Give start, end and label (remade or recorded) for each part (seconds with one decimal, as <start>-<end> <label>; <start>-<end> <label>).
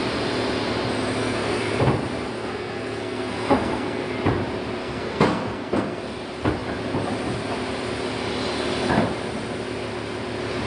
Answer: 0.0-1.2 recorded; 1.2-1.7 remade; 1.7-2.3 recorded; 2.3-4.1 remade; 4.1-4.8 recorded; 4.8-6.0 remade; 6.0-10.7 recorded